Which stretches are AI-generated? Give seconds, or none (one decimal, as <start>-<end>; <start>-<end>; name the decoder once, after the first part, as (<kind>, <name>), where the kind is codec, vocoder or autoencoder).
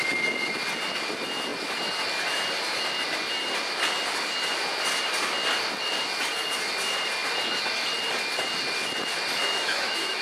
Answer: 9.4-10.2 (autoencoder, DAC-VAE)